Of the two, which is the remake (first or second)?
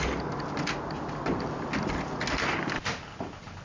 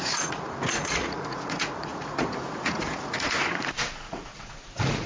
second